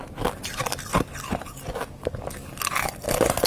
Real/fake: real